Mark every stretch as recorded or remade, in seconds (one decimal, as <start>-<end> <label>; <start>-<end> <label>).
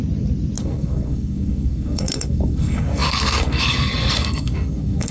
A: 0.0-0.6 recorded; 0.6-5.1 remade